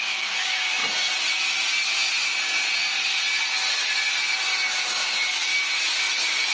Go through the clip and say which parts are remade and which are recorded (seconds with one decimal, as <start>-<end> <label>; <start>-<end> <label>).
0.0-0.8 remade; 0.8-4.7 recorded; 4.7-5.5 remade; 5.5-6.5 recorded